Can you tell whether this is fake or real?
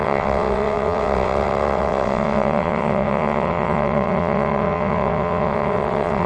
fake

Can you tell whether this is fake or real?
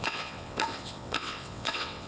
fake